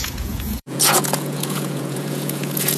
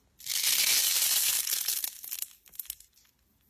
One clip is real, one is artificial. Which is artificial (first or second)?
first